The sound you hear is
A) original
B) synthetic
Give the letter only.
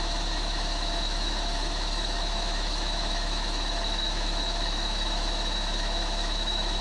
B